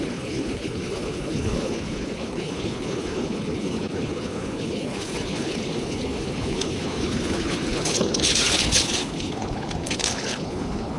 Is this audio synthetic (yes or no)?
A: yes